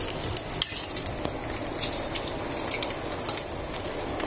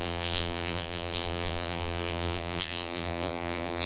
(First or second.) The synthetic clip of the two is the second